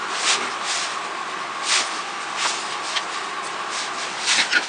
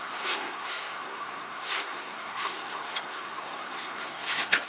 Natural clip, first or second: first